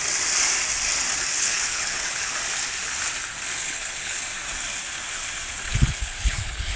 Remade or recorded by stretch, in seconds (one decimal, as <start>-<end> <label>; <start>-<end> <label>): 0.0-1.3 recorded; 1.3-2.3 remade; 2.3-3.6 recorded; 3.6-4.2 remade; 4.2-5.7 recorded; 5.7-6.8 remade